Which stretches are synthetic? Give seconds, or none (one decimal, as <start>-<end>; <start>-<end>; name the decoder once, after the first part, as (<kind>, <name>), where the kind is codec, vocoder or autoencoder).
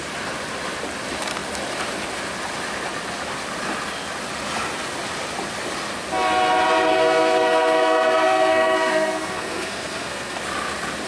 6.9-10.4 (codec, SNAC)